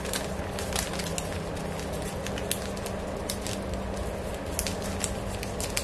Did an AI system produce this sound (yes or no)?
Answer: no